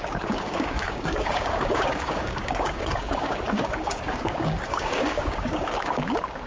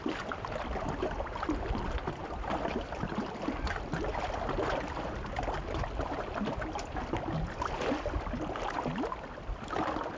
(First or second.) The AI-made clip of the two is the first